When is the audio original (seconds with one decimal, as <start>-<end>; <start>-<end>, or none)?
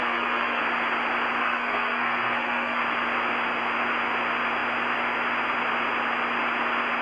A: 0.6-1.4; 2.8-7.0